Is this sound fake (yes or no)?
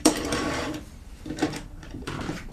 yes